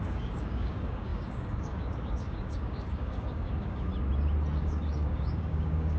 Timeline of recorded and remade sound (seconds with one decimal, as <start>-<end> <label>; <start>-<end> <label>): 0.0-3.9 remade; 3.9-4.6 recorded; 4.6-6.0 remade